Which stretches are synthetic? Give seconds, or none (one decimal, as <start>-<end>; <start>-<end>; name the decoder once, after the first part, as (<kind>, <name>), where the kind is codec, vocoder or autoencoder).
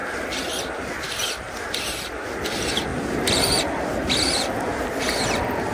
2.9-3.6 (vocoder, BigVGAN v2)